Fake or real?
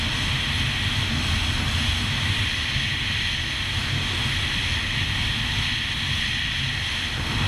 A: real